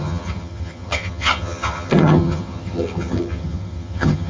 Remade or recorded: remade